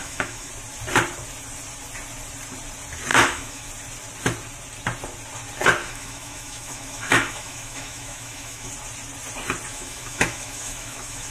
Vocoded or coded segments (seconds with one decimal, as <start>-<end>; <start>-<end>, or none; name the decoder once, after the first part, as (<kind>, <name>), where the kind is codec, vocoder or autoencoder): 0.0-0.5 (autoencoder, DAC-VAE); 3.1-3.7; 5.8-8.7; 9.7-11.3

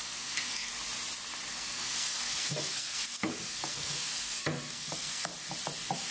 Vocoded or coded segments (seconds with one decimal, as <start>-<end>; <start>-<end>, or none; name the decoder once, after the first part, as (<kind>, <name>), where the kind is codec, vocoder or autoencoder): 0.0-0.7 (codec, SNAC); 1.5-5.3